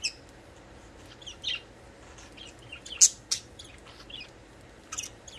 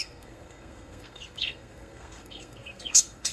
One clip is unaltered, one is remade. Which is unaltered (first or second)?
first